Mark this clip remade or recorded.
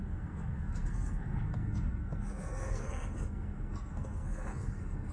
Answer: remade